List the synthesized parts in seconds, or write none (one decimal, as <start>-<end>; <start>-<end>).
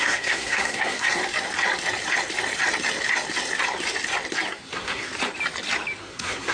0.0-1.2; 4.5-5.1; 6.0-6.5